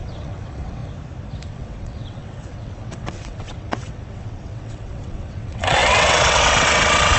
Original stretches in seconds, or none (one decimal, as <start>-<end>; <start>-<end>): 0.8-1.5

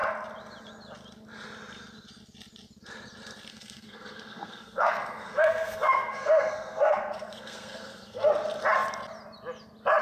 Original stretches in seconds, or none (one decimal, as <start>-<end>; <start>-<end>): 0.0-3.5; 8.3-10.0

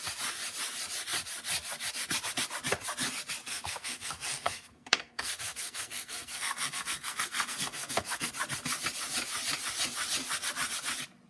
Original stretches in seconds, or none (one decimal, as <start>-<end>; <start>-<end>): 0.0-3.4; 8.3-11.3

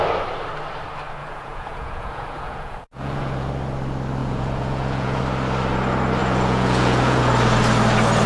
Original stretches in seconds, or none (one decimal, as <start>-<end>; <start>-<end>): 0.0-1.2; 3.5-4.2; 5.2-6.2; 7.2-8.3

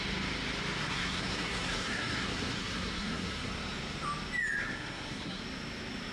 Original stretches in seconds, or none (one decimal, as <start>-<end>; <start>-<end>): 0.0-0.8; 3.5-4.6; 5.4-6.1

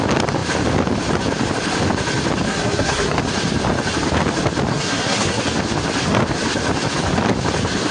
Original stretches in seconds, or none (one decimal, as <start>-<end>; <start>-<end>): 0.0-2.5; 3.2-4.7; 5.4-7.9